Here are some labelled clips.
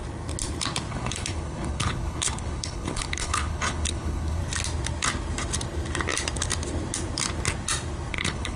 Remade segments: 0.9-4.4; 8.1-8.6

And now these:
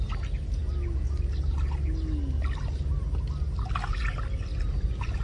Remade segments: none

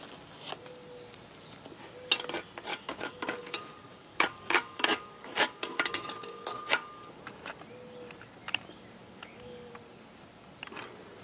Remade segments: 2.7-7.2; 9.0-9.7